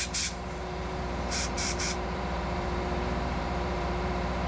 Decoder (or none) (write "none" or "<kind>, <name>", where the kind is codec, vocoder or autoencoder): vocoder, BigVGAN v2